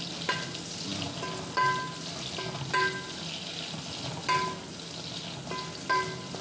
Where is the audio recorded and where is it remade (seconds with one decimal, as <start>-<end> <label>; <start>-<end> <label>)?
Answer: 0.0-6.4 recorded

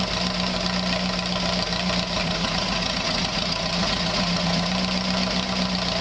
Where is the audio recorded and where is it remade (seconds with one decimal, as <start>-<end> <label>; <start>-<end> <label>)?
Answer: 0.0-2.2 recorded; 2.2-4.7 remade; 4.7-6.0 recorded

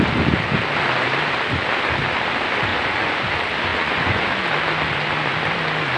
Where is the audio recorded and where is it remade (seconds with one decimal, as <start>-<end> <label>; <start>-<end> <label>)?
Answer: 0.0-2.7 recorded; 2.7-3.2 remade; 3.2-3.7 recorded; 3.7-4.2 remade; 4.2-6.0 recorded

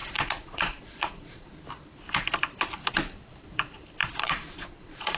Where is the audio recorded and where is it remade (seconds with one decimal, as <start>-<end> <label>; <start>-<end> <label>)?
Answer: 0.0-1.5 remade; 1.5-4.0 recorded; 4.0-5.2 remade

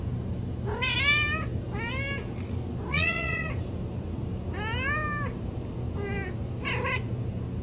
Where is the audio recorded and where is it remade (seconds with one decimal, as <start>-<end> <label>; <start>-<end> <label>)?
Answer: 0.0-2.9 recorded; 2.9-3.5 remade; 3.5-7.6 recorded

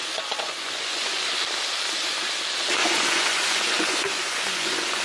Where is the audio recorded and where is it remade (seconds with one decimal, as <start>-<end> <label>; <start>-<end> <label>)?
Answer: 0.0-1.3 remade; 1.3-2.8 recorded; 2.8-5.0 remade

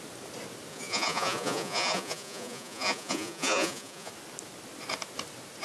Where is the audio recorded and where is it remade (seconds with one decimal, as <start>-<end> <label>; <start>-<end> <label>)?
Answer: 0.0-0.7 recorded; 0.7-4.1 remade; 4.1-5.6 recorded

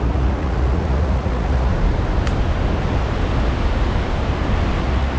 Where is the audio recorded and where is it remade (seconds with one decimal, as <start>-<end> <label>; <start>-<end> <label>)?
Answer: 0.0-1.7 remade; 1.7-4.8 recorded; 4.8-5.2 remade